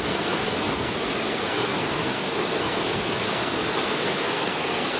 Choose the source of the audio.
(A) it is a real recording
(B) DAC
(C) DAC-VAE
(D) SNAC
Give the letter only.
D